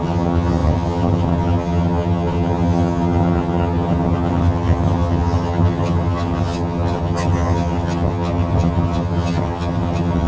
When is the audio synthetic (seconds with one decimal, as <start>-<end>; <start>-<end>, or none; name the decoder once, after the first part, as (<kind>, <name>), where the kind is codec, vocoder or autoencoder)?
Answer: 0.0-10.3 (vocoder, HiFi-GAN)